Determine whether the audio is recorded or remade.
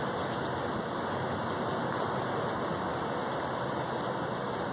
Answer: recorded